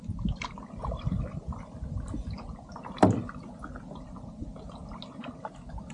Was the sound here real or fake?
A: real